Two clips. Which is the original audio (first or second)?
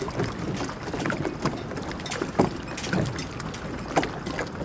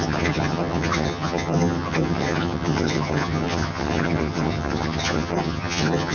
first